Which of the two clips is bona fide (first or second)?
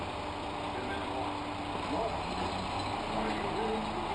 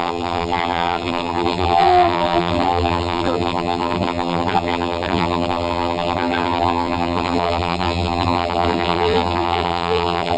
first